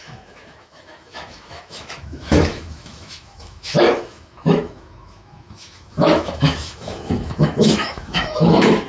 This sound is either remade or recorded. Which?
remade